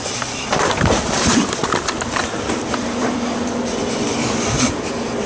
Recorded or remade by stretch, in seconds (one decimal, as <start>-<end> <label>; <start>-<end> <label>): 0.0-1.6 remade; 1.6-2.2 recorded; 2.2-5.3 remade